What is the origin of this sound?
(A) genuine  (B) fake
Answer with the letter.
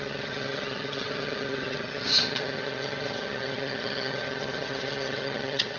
B